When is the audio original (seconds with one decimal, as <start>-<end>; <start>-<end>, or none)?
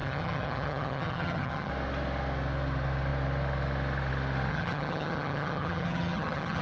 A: 1.7-4.5